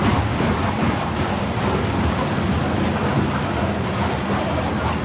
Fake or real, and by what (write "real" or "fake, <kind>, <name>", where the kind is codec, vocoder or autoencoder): real